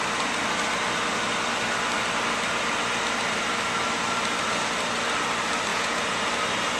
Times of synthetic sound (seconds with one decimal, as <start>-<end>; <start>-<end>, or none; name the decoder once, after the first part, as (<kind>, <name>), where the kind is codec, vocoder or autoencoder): 5.7-6.2 (vocoder, Vocos)